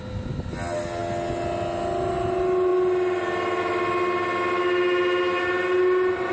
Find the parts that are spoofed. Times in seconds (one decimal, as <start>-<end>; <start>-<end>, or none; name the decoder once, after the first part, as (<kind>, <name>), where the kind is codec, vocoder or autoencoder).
none